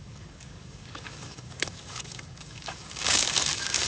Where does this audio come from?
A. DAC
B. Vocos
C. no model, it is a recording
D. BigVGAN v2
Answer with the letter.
A